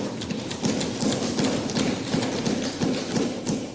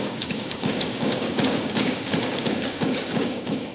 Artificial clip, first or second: second